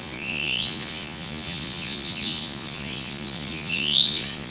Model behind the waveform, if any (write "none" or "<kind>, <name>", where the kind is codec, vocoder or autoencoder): vocoder, Vocos